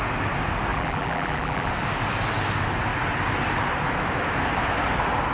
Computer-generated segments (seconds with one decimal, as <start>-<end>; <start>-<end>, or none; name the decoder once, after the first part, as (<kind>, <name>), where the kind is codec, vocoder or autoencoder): 0.7-1.7 (vocoder, BigVGAN v2)

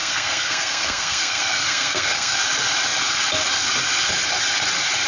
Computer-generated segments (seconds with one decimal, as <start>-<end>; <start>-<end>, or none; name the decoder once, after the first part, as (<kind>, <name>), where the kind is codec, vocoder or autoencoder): 0.0-2.4 (codec, SNAC)

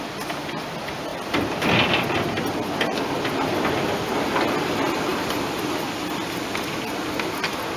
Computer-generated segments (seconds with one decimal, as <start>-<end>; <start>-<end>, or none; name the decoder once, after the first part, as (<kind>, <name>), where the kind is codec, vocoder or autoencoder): none

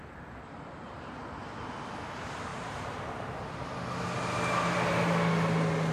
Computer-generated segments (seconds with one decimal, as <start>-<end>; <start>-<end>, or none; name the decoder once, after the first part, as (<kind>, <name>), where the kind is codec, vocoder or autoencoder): 2.5-3.1 (vocoder, BigVGAN v2)